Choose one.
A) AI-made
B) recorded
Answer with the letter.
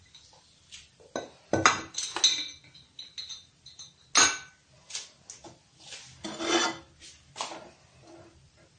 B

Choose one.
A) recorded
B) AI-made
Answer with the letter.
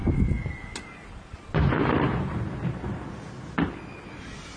A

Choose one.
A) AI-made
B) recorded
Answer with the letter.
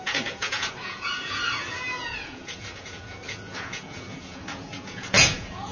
A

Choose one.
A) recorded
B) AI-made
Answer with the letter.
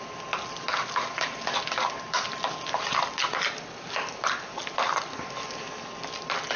A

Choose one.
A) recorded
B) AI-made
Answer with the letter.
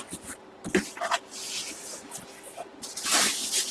A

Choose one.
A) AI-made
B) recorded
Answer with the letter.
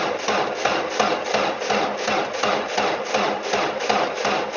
B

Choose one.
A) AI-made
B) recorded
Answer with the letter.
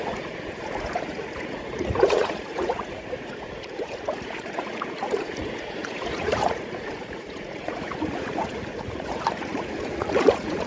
A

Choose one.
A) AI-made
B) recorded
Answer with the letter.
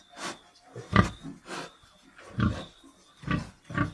B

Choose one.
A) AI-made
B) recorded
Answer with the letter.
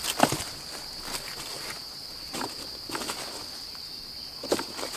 B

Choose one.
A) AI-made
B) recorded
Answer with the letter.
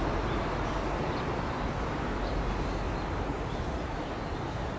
B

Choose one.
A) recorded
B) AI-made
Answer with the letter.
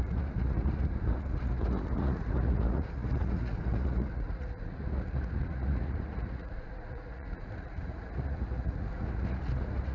B